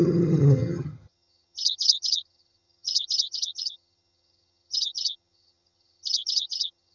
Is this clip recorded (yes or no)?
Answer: no